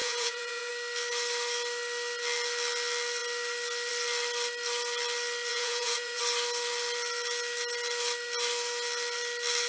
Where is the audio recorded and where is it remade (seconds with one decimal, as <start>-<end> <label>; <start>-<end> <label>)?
0.0-0.7 remade; 0.7-5.5 recorded; 5.5-6.2 remade; 6.2-9.7 recorded